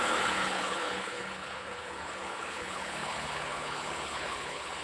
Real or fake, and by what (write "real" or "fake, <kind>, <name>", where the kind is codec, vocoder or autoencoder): fake, codec, HILCodec